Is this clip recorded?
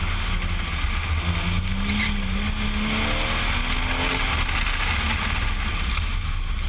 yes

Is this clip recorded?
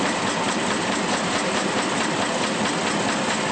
yes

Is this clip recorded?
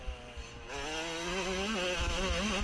yes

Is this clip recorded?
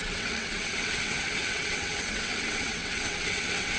no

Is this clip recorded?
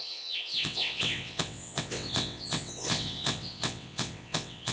no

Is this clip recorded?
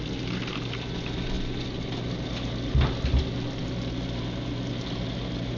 yes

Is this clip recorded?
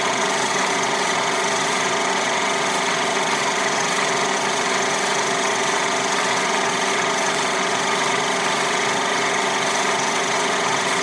no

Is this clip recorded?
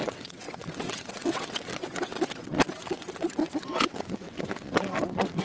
no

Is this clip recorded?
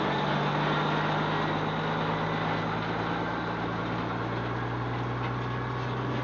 yes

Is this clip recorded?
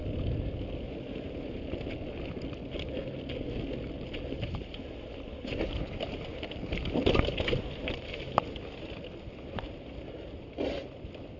yes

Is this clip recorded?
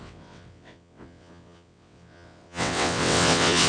no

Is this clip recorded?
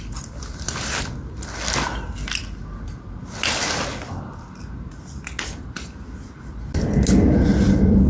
yes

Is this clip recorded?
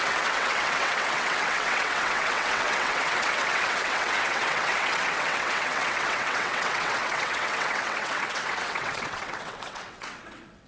no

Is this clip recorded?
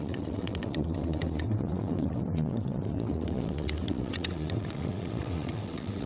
no